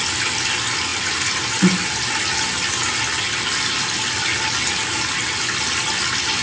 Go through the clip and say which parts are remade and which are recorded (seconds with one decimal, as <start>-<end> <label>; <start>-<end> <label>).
0.0-6.4 recorded